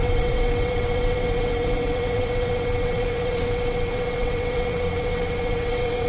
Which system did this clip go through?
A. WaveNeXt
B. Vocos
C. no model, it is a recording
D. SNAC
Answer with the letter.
A